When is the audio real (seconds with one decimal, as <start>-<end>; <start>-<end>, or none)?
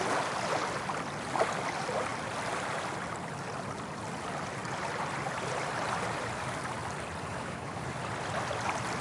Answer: 0.0-7.3; 7.8-9.0